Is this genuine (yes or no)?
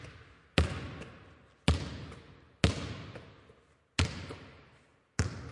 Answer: yes